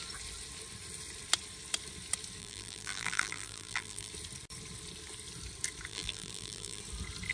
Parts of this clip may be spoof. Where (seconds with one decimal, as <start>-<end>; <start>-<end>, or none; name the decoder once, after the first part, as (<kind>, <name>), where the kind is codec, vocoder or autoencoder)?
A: 2.4-4.1 (vocoder, BigVGAN v2); 5.9-6.8